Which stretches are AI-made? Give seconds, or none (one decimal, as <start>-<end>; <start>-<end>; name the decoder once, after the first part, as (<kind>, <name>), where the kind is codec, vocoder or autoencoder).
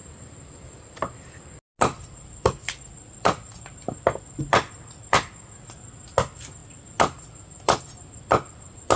none